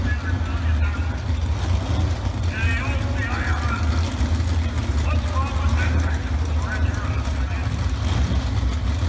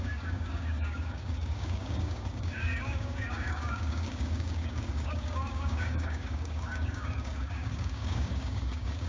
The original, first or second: first